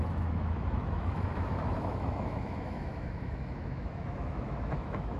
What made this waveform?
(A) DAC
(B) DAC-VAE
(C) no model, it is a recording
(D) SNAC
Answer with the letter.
B